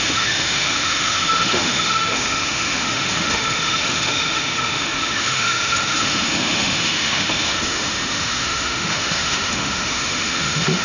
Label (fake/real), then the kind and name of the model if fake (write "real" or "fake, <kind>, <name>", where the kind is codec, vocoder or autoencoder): fake, autoencoder, DAC-VAE